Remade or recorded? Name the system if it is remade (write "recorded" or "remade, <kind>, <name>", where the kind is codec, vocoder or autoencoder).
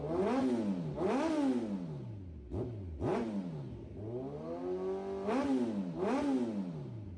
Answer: recorded